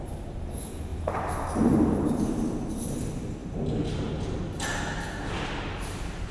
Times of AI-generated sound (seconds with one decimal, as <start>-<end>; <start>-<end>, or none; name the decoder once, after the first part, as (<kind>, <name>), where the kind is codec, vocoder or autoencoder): 0.9-2.7 (vocoder, BigVGAN v2); 3.4-4.1